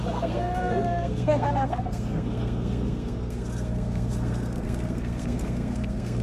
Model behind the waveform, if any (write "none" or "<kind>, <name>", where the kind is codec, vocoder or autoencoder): codec, SNAC